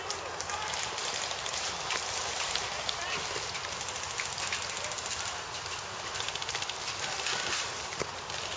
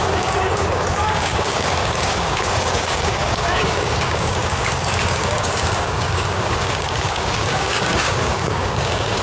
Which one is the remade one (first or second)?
second